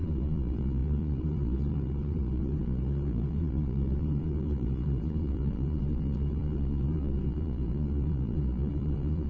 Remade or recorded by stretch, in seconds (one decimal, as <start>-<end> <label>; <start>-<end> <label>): 0.0-9.3 remade